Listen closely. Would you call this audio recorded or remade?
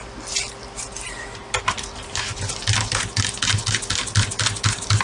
recorded